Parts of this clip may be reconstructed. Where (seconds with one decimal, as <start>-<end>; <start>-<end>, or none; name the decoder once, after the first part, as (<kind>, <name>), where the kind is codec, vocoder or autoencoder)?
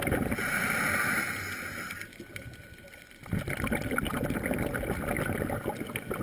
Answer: none